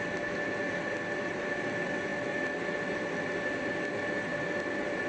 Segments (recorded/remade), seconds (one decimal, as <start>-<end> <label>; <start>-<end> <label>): 0.0-5.1 recorded